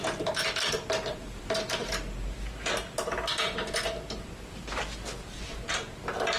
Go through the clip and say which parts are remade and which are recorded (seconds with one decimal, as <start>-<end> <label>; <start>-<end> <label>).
0.0-6.4 recorded